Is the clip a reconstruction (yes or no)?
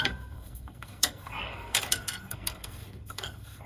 yes